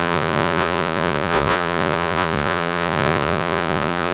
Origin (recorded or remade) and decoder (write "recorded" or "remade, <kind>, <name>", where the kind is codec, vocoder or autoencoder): remade, vocoder, Vocos